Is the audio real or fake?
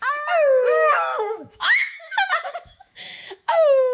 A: fake